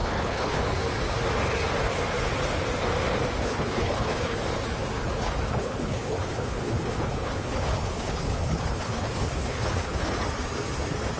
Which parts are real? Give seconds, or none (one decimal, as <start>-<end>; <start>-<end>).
0.6-3.4; 4.4-5.0; 10.2-11.2